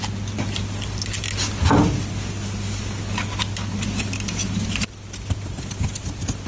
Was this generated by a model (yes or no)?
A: no